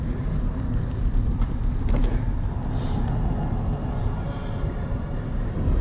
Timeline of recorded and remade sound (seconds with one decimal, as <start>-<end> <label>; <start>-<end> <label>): 0.0-2.0 remade; 2.0-4.3 recorded; 4.3-5.8 remade